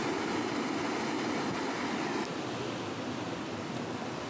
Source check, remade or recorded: recorded